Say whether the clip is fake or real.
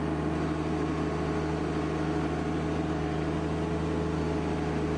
real